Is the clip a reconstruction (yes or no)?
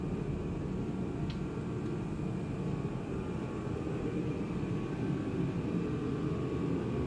no